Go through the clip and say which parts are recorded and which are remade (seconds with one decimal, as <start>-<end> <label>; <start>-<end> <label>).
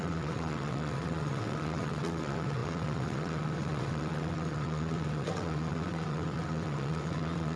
0.0-7.6 remade